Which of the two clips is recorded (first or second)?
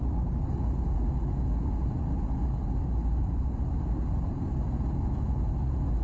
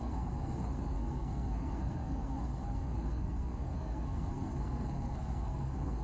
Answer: first